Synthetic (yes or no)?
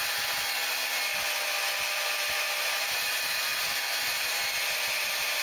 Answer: no